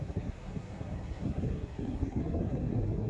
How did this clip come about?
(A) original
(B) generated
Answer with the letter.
B